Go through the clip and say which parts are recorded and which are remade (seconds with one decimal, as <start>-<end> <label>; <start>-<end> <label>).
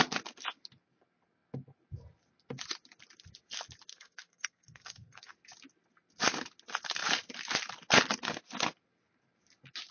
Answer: 0.0-3.9 recorded; 3.9-5.3 remade; 5.3-9.9 recorded